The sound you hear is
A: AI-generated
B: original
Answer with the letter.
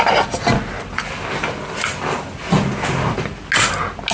B